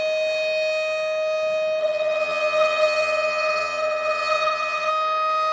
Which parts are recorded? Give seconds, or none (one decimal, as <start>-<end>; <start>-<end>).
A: 0.0-1.8; 4.9-5.5